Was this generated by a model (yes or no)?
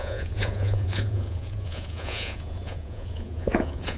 yes